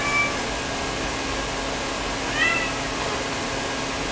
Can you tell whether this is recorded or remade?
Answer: recorded